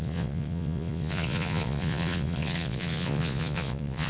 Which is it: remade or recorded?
remade